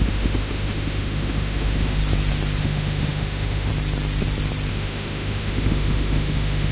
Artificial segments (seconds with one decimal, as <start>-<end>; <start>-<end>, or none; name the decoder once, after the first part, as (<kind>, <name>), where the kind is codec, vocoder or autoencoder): 0.0-2.0 (autoencoder, DAC-VAE); 2.6-3.7; 4.7-6.7